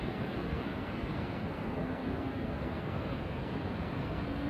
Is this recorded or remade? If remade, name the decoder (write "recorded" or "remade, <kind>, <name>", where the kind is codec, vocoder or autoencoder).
remade, codec, SNAC